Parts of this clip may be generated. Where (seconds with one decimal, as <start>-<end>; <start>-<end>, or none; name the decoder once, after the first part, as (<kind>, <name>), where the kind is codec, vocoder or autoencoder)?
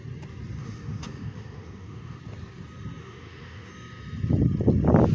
0.6-2.2 (autoencoder, DAC-VAE); 3.0-3.7